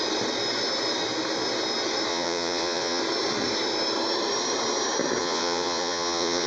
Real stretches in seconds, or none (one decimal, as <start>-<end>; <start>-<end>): 0.0-2.1; 3.0-5.2